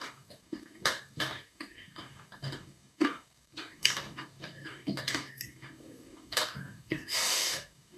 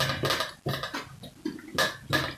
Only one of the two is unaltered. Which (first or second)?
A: second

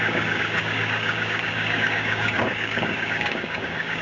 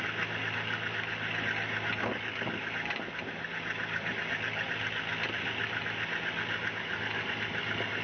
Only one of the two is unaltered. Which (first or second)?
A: second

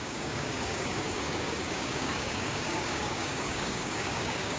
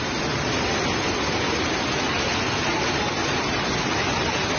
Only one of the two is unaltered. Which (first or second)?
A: second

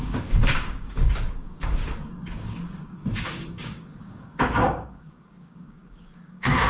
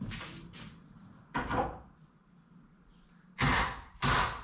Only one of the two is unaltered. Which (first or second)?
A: second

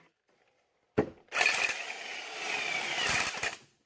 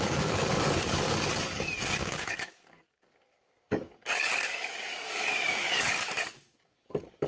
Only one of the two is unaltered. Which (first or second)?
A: first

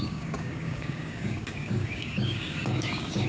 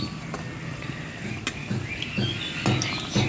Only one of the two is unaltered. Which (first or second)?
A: second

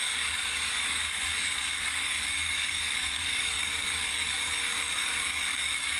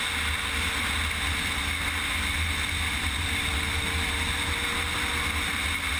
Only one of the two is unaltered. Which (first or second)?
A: second